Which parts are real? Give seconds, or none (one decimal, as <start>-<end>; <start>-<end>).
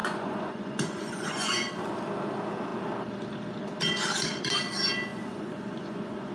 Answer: 1.7-5.1